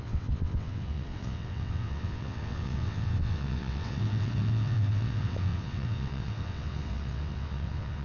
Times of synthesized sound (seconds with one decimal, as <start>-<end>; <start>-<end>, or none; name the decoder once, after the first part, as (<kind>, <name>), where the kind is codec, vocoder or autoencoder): 0.0-8.0 (vocoder, WaveNeXt)